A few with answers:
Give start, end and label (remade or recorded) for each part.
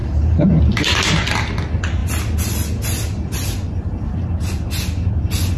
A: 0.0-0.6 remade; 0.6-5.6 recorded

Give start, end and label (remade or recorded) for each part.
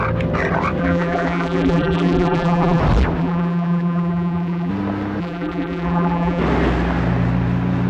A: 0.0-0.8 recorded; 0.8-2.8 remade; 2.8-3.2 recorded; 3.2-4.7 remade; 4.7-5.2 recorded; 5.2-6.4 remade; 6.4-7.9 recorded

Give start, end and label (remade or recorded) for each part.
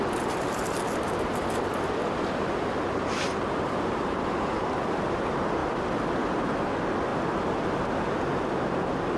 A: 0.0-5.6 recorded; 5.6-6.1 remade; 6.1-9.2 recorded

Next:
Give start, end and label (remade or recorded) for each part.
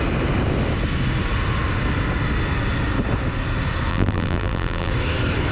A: 0.0-3.9 recorded; 3.9-4.9 remade; 4.9-5.5 recorded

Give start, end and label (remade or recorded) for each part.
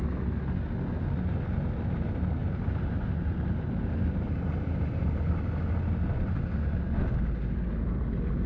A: 0.0-2.4 recorded; 2.4-5.3 remade; 5.3-8.5 recorded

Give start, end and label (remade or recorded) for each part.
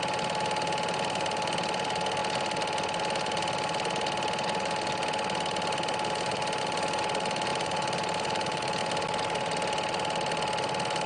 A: 0.0-7.5 recorded; 7.5-8.8 remade; 8.8-11.1 recorded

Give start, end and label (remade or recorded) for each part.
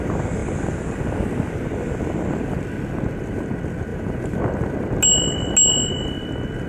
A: 0.0-3.9 recorded; 3.9-4.4 remade; 4.4-6.7 recorded